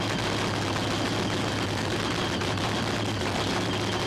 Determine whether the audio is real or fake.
real